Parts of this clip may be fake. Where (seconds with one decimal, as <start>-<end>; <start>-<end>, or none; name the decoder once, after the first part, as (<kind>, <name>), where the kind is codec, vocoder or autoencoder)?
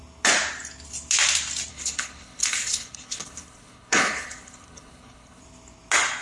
1.7-5.4 (codec, HILCodec)